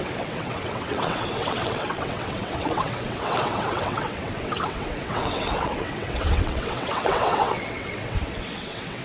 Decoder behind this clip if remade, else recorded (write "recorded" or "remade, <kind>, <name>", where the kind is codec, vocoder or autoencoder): remade, vocoder, WaveNeXt